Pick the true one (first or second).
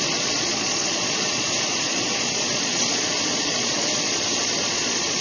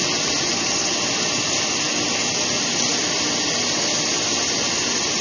second